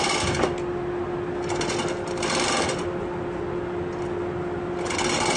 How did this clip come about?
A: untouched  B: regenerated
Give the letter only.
A